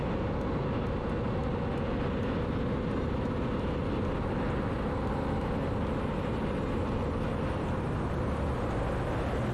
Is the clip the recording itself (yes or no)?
yes